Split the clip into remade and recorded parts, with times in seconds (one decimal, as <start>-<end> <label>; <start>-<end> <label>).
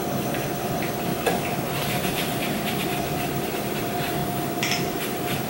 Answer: 0.0-1.1 recorded; 1.1-3.7 remade; 3.7-5.5 recorded